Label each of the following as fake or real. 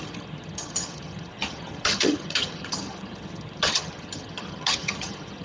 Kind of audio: fake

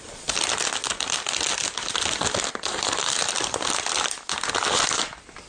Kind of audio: real